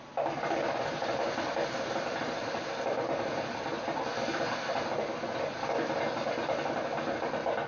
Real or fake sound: real